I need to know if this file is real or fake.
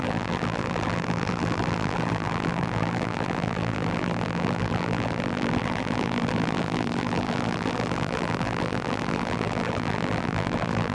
fake